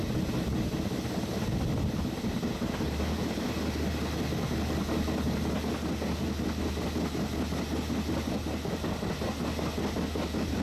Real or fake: real